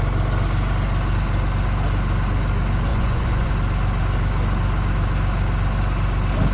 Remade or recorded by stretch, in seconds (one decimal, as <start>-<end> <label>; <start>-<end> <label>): 0.0-2.9 recorded; 2.9-3.5 remade; 3.5-6.5 recorded